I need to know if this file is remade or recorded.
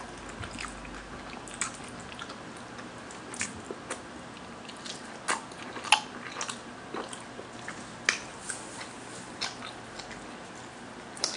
recorded